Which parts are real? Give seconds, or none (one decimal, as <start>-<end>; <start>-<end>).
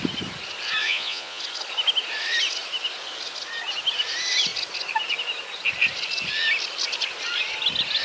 0.0-0.8; 1.4-8.0